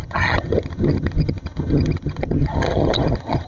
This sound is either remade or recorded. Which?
remade